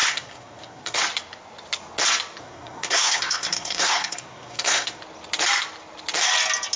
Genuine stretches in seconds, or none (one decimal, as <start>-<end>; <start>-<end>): 1.0-2.4; 5.0-6.8